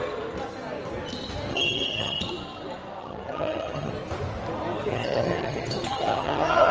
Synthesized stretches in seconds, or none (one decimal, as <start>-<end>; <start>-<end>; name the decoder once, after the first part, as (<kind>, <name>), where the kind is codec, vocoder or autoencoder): 1.5-2.3 (vocoder, HiFi-GAN); 3.0-3.9; 4.9-6.7

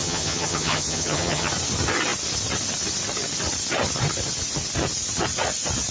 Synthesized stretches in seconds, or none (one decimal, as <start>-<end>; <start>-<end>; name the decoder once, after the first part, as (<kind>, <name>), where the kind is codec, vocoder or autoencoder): 0.0-1.5 (vocoder, HiFi-GAN)

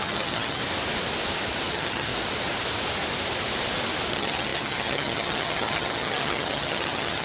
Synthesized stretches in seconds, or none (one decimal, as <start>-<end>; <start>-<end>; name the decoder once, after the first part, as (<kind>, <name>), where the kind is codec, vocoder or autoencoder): 0.0-0.6 (vocoder, HiFi-GAN); 1.7-2.1; 4.1-7.2

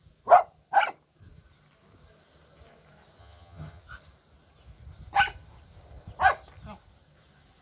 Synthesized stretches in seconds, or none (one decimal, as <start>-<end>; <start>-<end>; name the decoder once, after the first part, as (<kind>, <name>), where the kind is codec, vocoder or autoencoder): 3.2-3.8 (vocoder, HiFi-GAN)

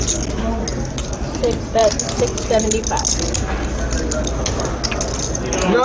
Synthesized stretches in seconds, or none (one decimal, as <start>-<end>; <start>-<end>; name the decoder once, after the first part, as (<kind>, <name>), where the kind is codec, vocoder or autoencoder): none

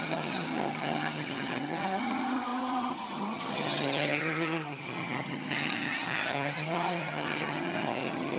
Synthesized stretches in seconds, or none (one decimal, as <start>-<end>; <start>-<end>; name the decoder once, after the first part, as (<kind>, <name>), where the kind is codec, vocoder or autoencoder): 0.0-8.4 (vocoder, HiFi-GAN)

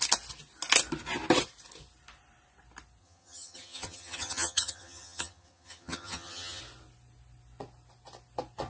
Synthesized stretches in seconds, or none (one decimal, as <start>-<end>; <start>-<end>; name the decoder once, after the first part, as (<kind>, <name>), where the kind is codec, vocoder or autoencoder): 3.0-6.6 (vocoder, HiFi-GAN)